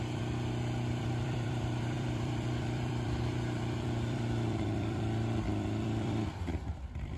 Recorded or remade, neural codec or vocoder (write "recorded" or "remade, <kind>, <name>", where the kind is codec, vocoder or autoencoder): remade, vocoder, BigVGAN v2